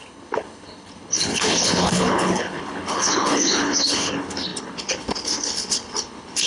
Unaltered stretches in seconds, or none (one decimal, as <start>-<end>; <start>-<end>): none